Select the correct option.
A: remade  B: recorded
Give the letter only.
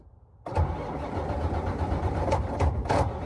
B